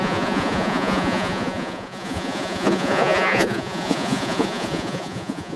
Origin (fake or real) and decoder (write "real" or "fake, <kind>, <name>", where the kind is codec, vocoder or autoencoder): fake, vocoder, Vocos